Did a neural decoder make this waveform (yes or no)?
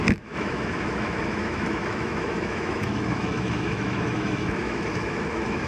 yes